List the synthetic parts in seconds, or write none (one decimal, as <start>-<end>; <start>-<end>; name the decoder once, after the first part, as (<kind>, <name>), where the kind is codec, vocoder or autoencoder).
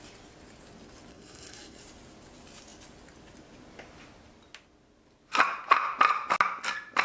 1.1-1.8 (codec, SNAC)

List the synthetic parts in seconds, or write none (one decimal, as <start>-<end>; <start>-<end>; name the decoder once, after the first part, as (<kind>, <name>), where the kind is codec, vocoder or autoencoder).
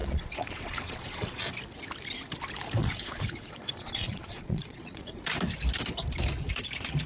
0.0-1.4 (vocoder, Vocos); 2.8-5.2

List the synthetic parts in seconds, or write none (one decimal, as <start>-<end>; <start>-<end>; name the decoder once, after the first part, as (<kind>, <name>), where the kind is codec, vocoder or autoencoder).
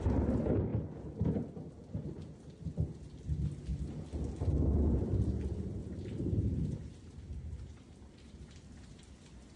0.7-1.7 (vocoder, BigVGAN v2); 5.8-9.1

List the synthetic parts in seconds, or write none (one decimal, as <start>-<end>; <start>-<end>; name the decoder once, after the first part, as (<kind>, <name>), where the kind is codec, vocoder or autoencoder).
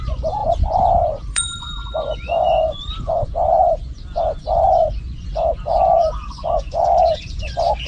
0.0-7.9 (vocoder, Vocos)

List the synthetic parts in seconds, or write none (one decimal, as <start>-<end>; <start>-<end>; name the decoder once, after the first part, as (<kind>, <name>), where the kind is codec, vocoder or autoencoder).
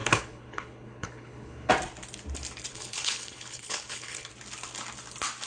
0.0-1.7 (codec, HILCodec); 2.7-4.3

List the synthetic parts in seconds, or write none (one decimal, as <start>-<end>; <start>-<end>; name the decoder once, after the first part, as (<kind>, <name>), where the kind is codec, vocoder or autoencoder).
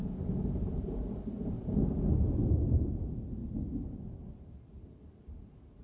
none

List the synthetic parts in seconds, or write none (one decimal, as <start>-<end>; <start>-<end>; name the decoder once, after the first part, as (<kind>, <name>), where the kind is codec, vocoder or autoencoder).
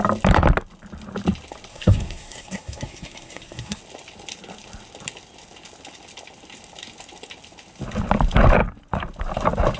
1.7-3.8 (codec, SNAC)